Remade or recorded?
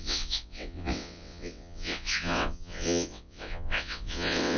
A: remade